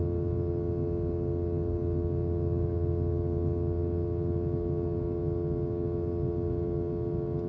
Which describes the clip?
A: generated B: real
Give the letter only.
B